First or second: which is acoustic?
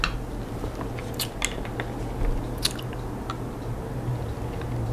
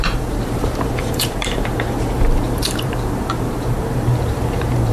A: first